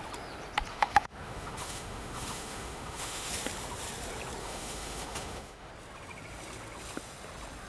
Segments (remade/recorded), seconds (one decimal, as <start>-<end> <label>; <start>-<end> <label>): 0.0-0.7 recorded; 0.7-3.3 remade; 3.3-4.4 recorded; 4.4-5.7 remade; 5.7-7.7 recorded